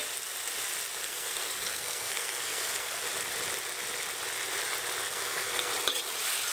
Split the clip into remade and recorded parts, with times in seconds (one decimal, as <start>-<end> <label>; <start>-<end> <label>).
0.0-1.0 recorded; 1.0-3.0 remade; 3.0-5.0 recorded; 5.0-5.7 remade; 5.7-6.5 recorded